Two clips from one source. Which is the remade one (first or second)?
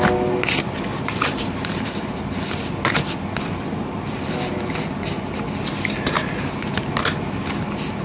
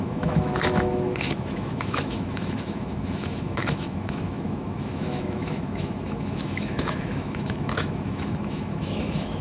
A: second